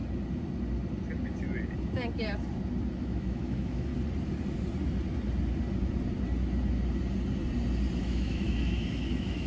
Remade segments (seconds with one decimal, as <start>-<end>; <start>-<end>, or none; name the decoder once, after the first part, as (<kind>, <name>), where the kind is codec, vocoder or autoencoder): 3.0-3.9 (autoencoder, DAC-VAE); 8.0-9.5